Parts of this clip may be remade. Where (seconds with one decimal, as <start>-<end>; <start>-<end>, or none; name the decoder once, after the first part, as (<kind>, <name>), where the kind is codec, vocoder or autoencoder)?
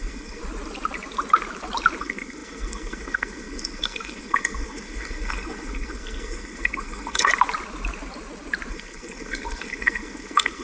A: 0.0-0.4 (codec, SNAC); 2.0-7.3; 8.7-10.6